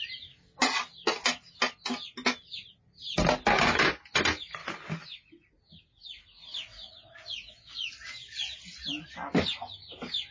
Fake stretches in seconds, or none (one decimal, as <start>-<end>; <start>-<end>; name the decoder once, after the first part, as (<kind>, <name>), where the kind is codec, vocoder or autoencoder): none